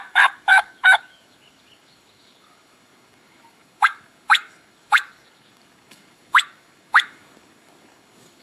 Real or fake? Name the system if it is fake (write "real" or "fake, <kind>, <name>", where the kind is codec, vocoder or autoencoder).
fake, codec, DAC